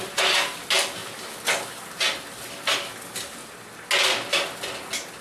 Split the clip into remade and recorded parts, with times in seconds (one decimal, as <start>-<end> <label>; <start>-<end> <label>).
0.0-5.2 recorded